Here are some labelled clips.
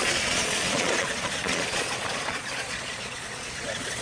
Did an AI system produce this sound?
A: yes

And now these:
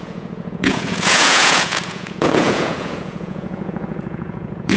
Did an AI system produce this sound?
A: yes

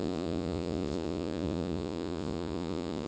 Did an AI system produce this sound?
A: yes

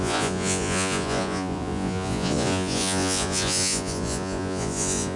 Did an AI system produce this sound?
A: yes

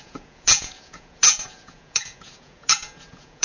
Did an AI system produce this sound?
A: yes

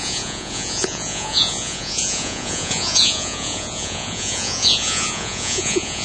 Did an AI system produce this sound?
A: yes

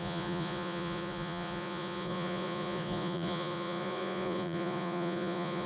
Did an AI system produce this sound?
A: yes